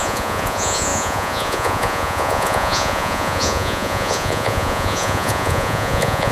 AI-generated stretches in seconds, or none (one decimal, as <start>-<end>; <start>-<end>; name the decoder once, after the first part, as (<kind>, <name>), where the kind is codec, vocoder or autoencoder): 0.0-6.3 (vocoder, Vocos)

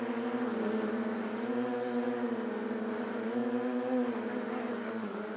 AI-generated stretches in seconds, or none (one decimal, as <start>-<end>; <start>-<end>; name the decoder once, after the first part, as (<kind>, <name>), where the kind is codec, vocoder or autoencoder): 0.0-3.4 (vocoder, BigVGAN v2); 4.7-5.4

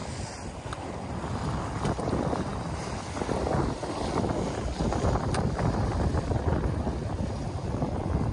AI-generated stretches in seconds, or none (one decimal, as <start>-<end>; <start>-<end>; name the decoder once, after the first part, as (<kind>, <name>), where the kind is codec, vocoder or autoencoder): none

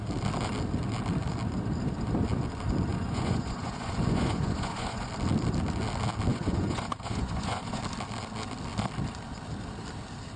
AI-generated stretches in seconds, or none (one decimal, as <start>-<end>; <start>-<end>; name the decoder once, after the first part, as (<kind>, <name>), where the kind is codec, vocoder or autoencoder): 2.9-5.1 (vocoder, Vocos); 6.3-7.8

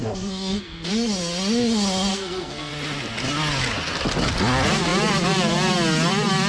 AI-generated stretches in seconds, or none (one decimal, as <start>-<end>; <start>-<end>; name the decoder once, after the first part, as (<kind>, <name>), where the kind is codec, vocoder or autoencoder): 0.0-0.9 (codec, SNAC); 2.1-2.7